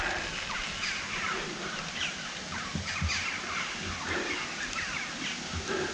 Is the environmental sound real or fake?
real